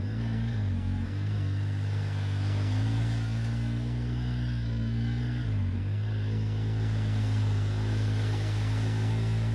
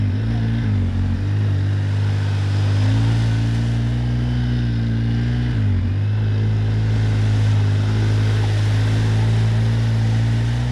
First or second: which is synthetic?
first